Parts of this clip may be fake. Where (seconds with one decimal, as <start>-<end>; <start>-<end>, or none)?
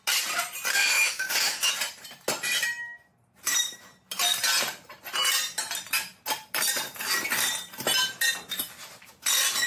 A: 0.7-1.7